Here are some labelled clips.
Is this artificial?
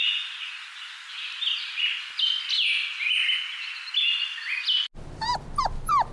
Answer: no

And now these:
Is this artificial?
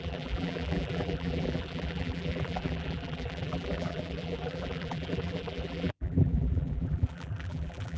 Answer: yes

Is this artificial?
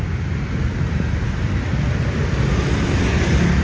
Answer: no